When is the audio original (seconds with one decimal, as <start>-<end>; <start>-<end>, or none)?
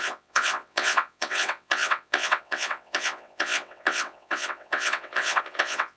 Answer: none